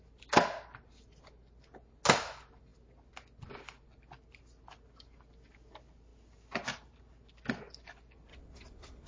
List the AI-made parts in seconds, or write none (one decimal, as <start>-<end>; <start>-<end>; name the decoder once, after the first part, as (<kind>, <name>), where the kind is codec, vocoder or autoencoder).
8.3-9.1 (vocoder, WaveNeXt)